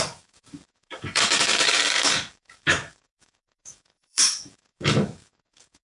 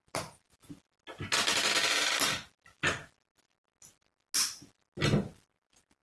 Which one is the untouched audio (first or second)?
second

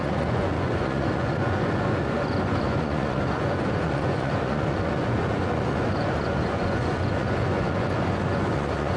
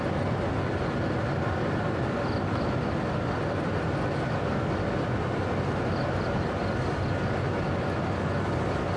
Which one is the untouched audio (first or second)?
second